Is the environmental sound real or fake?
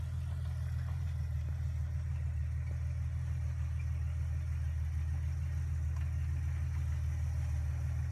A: real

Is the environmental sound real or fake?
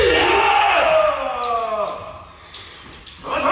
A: real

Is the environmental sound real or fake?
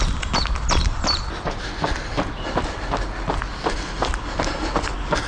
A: real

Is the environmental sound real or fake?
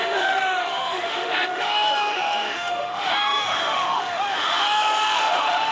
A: fake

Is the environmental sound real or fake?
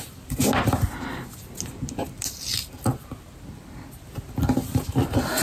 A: real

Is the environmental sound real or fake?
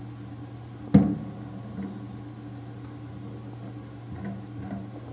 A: real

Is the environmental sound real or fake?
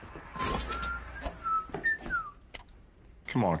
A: real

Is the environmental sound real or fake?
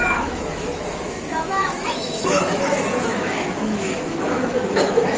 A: fake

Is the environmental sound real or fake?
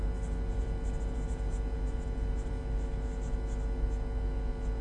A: real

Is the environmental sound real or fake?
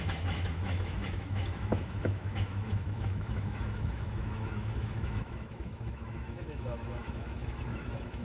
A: fake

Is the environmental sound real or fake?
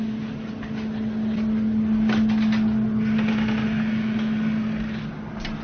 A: real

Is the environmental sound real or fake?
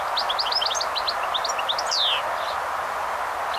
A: real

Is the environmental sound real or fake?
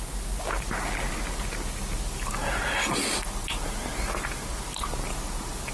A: real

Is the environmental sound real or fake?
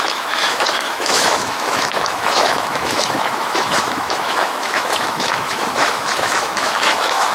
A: fake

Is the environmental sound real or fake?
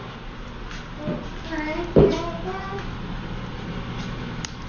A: real